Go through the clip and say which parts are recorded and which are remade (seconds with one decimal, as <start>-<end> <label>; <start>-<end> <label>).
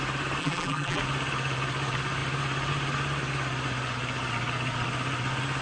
0.0-0.4 recorded; 0.4-1.0 remade; 1.0-5.6 recorded